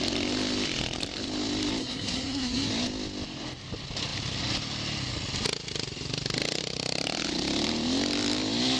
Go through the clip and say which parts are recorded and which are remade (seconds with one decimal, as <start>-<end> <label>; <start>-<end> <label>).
0.0-1.8 recorded; 1.8-2.7 remade; 2.7-8.8 recorded